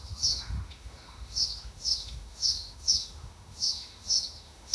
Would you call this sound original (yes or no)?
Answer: no